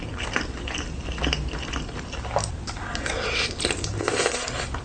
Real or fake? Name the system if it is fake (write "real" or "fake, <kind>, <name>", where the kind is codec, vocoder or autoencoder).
real